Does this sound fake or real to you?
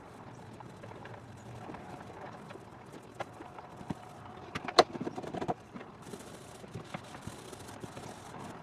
fake